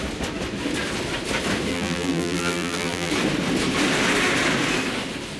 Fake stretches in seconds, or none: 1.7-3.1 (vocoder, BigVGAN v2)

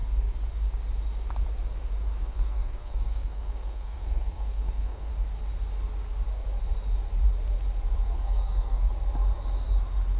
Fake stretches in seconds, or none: 2.2-5.1 (codec, SNAC); 8.1-8.9

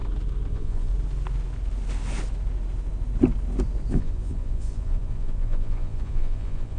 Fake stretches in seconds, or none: 0.5-0.9 (vocoder, Vocos); 3.9-6.8

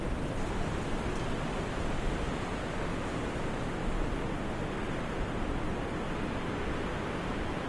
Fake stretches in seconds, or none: none